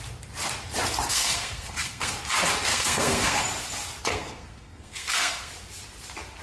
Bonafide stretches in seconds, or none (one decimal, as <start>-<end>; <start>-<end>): 0.0-1.1; 2.1-2.7; 3.4-4.1; 5.5-6.4